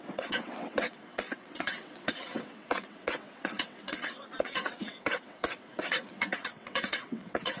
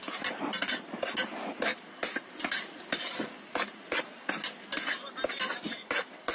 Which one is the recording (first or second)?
second